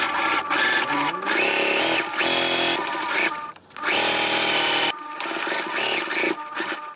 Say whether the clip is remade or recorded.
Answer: recorded